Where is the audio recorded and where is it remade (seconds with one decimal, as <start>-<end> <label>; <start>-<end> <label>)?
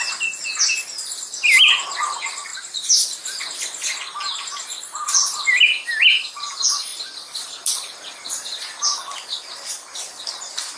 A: 0.0-10.8 recorded